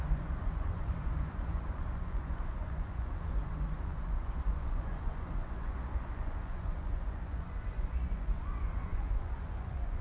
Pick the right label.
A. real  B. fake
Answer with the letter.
B